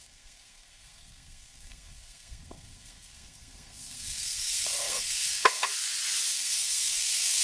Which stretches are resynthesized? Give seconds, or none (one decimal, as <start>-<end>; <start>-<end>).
0.0-5.7; 6.3-7.4